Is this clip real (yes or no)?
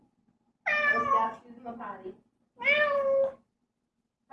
yes